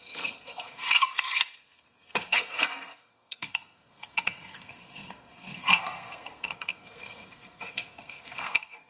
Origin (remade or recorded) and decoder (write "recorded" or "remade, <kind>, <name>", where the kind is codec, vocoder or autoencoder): remade, codec, SNAC